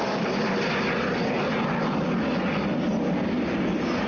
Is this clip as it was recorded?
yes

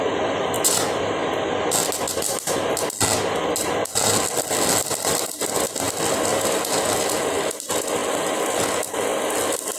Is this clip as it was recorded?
yes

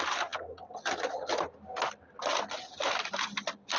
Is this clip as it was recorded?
yes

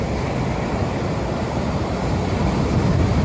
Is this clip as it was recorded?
yes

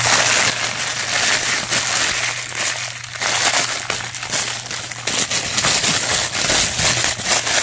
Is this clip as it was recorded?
yes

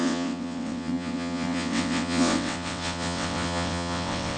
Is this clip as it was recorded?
no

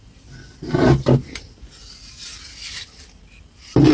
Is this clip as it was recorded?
yes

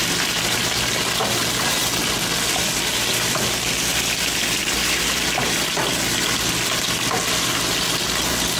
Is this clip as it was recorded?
yes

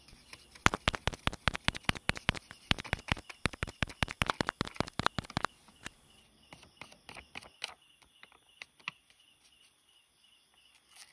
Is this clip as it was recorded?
yes